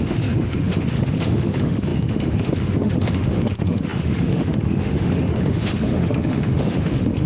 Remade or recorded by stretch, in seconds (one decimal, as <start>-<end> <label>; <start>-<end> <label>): 0.0-7.3 remade